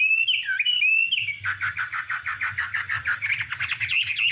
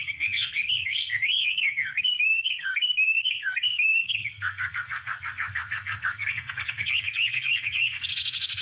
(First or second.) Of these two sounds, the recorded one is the first